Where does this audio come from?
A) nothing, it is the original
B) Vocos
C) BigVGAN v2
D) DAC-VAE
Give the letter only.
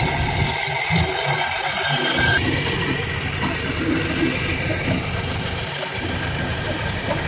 A